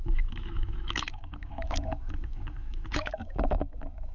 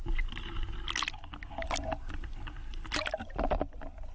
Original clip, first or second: second